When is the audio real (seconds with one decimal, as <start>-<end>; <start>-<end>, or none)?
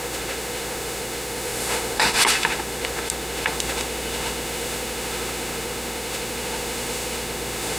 none